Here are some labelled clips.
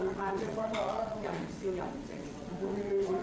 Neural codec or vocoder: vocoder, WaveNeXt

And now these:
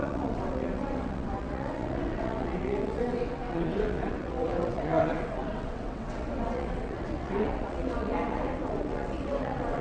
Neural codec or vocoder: vocoder, WaveNeXt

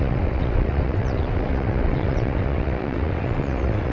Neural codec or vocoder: vocoder, WaveNeXt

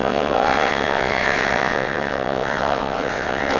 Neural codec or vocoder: vocoder, WaveNeXt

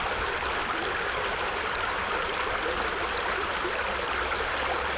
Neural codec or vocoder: none